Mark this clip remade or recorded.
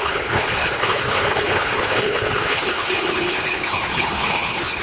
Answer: remade